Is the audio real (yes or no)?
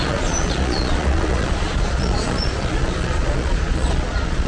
no